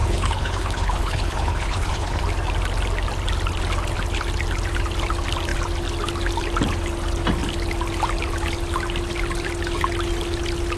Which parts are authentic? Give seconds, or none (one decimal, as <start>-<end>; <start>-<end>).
2.2-10.8